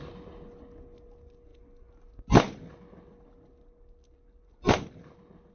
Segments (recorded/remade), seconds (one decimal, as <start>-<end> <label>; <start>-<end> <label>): 0.0-5.5 recorded